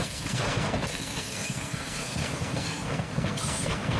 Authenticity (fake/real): fake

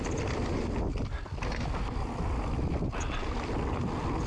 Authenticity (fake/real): real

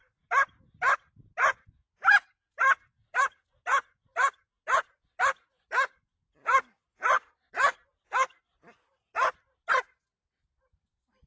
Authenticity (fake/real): real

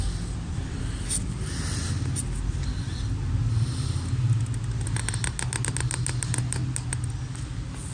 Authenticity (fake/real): real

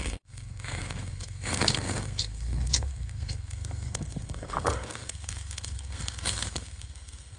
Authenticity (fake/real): fake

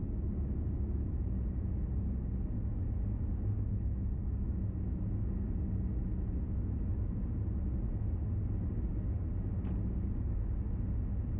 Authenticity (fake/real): real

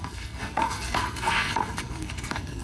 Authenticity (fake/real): fake